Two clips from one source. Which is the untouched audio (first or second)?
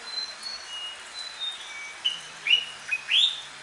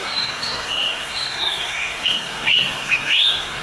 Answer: first